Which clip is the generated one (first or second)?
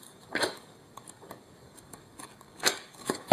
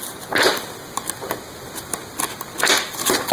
first